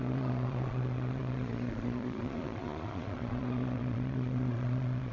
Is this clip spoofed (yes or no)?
yes